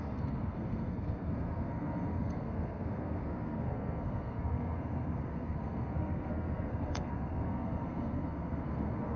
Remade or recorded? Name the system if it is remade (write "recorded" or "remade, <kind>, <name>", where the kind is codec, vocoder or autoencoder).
remade, codec, SNAC